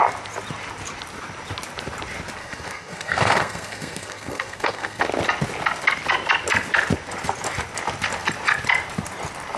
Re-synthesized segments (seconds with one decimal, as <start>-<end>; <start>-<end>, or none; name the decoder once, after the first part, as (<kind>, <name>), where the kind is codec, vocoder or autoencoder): 2.4-5.0 (codec, SNAC)